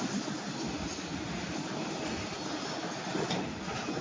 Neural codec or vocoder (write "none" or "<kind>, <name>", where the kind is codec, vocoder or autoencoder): none